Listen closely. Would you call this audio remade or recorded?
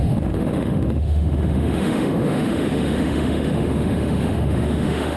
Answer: remade